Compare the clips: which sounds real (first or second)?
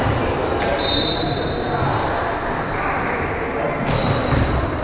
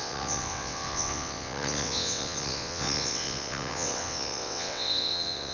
first